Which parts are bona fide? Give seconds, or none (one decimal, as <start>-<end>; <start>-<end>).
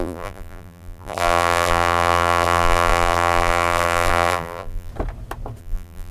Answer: 4.9-5.6